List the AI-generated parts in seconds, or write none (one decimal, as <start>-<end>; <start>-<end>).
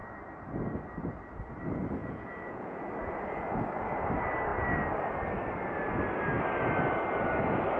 2.0-2.8